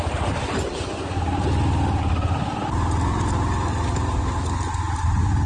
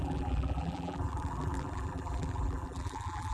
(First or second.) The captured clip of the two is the first